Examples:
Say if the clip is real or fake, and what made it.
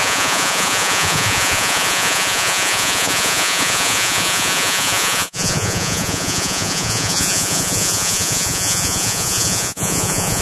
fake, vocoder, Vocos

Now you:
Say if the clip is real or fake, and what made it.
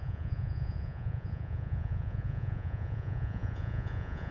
fake, vocoder, Vocos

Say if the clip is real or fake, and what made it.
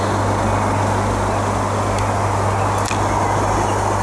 real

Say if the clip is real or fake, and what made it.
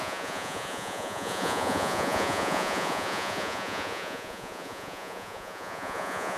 fake, vocoder, Vocos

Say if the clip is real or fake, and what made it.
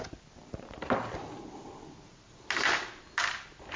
real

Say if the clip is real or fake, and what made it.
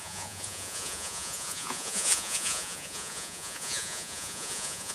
fake, vocoder, Vocos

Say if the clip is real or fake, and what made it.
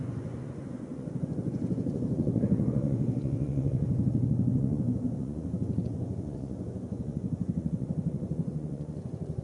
fake, vocoder, Vocos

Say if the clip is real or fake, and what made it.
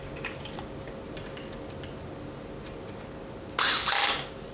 real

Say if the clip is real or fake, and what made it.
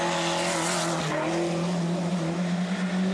real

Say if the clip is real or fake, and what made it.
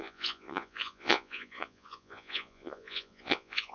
fake, vocoder, Vocos